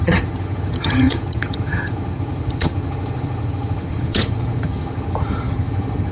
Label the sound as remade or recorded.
remade